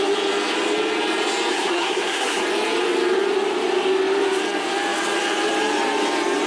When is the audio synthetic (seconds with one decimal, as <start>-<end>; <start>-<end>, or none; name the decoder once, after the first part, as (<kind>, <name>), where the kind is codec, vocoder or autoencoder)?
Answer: 1.5-2.4 (codec, SNAC)